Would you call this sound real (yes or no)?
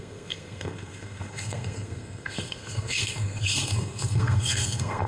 no